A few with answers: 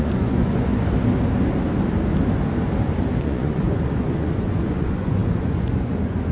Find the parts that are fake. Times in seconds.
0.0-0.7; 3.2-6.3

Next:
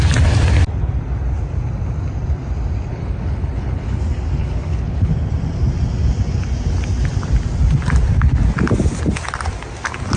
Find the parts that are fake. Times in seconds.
2.9-4.0; 4.4-5.1

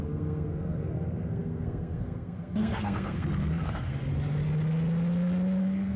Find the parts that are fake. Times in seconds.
0.0-4.0; 5.6-6.0

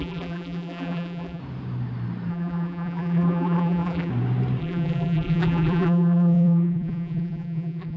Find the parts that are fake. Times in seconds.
0.0-1.4; 2.3-4.1; 4.6-8.0

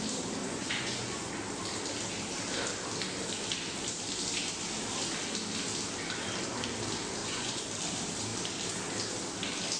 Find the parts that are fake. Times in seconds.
0.4-1.3; 7.2-7.7

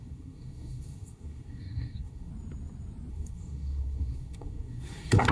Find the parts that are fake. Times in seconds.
0.0-2.3; 3.1-5.3

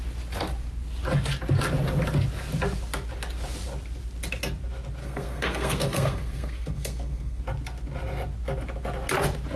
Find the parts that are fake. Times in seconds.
5.0-7.4

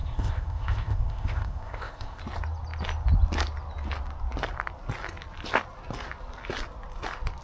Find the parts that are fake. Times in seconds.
0.0-2.2